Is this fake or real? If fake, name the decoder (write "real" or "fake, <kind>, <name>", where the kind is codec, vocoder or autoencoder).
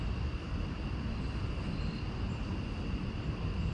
real